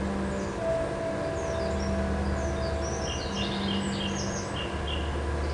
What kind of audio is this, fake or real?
real